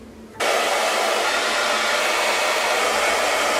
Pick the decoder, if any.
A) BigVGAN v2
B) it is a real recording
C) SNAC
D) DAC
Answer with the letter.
B